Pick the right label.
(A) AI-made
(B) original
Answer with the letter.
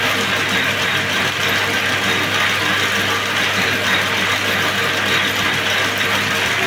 B